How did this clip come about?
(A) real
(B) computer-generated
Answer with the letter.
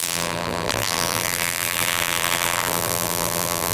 B